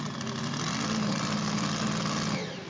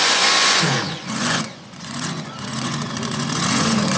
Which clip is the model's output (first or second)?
second